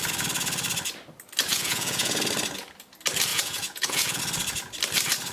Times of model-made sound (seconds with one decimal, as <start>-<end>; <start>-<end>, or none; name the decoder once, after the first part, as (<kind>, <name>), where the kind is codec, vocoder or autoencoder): 1.5-2.2 (vocoder, Vocos); 3.3-4.2